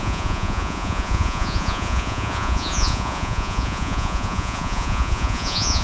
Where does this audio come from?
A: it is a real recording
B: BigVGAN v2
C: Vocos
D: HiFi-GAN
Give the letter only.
C